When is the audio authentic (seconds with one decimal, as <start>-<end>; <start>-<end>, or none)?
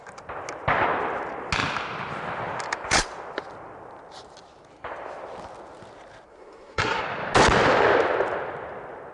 0.0-6.3; 7.0-9.1